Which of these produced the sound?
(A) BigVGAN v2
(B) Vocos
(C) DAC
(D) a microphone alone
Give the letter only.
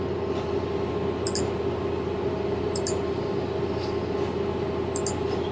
D